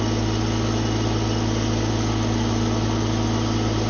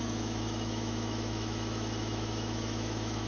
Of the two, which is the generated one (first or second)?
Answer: second